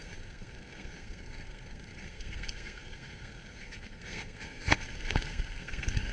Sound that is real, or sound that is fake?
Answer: fake